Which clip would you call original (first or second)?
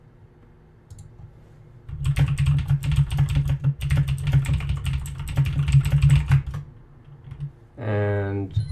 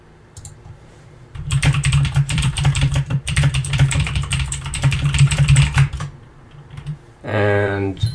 first